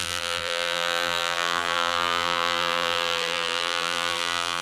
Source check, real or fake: fake